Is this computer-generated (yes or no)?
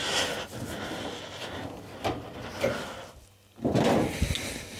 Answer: no